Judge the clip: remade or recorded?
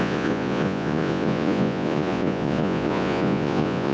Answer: remade